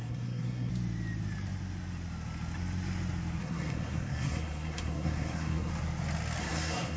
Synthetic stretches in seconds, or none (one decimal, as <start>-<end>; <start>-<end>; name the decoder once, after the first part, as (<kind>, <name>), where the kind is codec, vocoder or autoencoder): 0.0-0.7 (codec, SNAC); 3.4-5.7; 6.4-7.0